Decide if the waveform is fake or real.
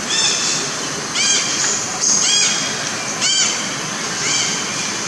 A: real